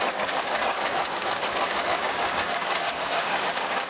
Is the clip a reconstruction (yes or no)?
yes